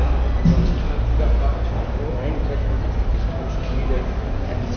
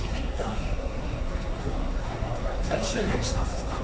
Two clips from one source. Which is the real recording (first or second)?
first